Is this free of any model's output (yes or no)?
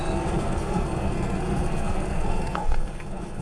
no